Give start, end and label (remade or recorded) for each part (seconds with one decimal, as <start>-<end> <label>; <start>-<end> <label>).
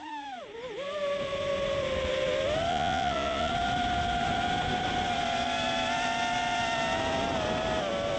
0.0-2.7 recorded; 2.7-3.5 remade; 3.5-8.2 recorded